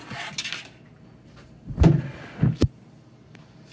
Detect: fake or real real